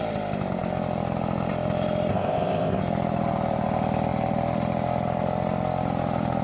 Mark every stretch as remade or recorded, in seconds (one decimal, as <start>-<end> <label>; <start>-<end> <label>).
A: 0.0-2.1 recorded; 2.1-2.8 remade; 2.8-6.4 recorded

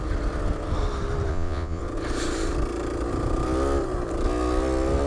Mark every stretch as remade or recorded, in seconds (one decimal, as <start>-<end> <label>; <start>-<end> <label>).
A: 0.0-1.3 recorded; 1.3-1.8 remade; 1.8-5.1 recorded